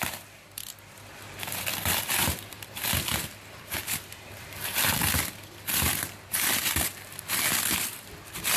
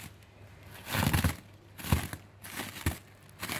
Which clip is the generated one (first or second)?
first